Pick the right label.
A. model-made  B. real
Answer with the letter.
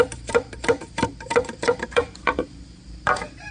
A